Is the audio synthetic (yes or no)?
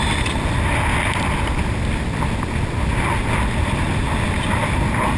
no